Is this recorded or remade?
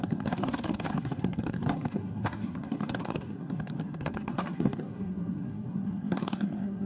remade